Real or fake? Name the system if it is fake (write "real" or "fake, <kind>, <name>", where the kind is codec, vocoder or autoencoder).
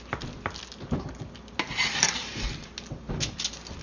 real